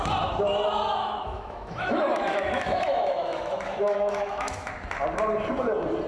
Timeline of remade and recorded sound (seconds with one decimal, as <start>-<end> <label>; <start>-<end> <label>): 0.0-1.0 recorded; 1.0-4.7 remade; 4.7-6.1 recorded